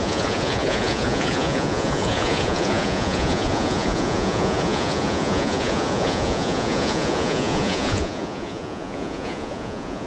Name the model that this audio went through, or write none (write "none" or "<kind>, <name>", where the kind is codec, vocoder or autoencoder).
vocoder, Vocos